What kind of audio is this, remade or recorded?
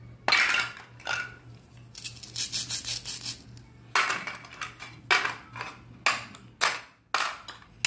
recorded